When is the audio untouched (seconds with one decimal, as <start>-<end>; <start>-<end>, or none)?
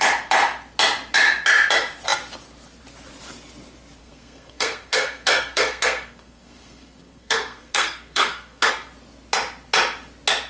0.0-4.0; 8.7-10.5